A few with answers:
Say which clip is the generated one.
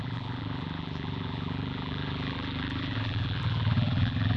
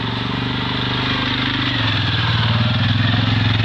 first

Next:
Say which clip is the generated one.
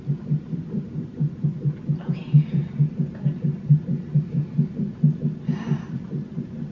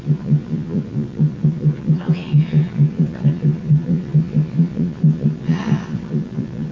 second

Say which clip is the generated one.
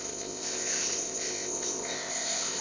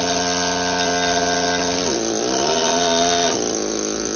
first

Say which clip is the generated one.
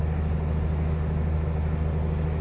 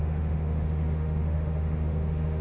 second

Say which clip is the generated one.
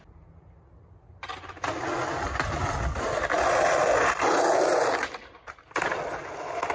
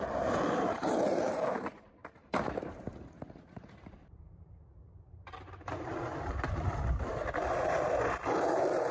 second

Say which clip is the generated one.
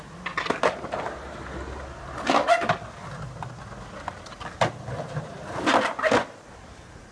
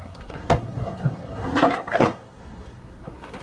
second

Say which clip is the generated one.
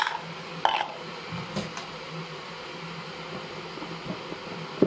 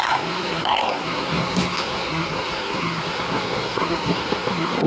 second